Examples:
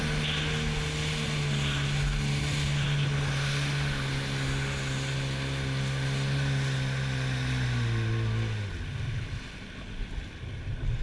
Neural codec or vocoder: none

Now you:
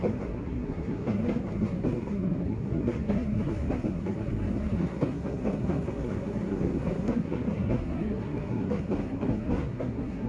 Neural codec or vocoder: codec, SNAC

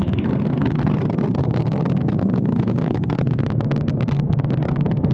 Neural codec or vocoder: codec, SNAC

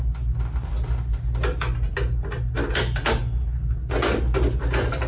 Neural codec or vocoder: none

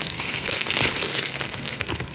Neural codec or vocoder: codec, SNAC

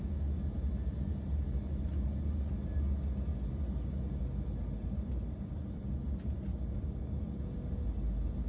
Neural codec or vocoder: none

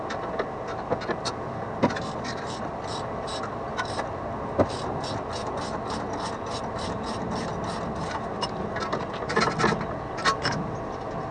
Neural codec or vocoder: none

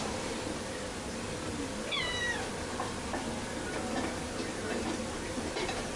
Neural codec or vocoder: none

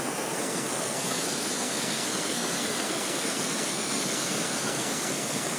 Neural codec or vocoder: codec, SNAC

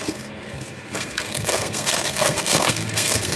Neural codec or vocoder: codec, SNAC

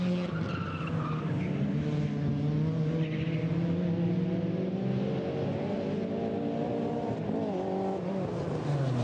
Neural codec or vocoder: none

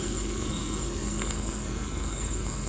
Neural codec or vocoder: codec, SNAC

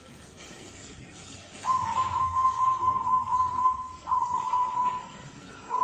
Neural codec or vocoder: codec, SNAC